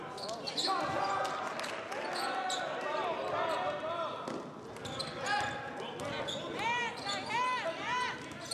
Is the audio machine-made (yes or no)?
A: no